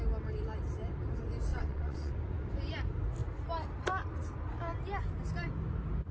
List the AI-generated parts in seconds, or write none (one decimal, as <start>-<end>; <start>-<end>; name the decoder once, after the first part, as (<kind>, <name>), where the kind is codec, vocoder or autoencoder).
1.5-2.1 (vocoder, WaveNeXt)